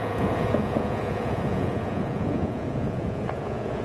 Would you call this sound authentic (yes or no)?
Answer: no